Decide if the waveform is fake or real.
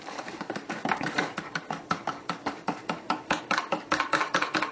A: fake